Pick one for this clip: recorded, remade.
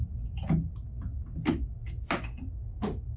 recorded